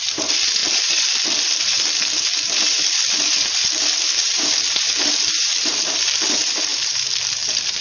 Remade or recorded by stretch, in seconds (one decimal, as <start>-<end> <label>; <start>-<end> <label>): 0.0-7.8 remade